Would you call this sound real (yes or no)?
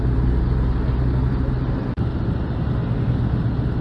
yes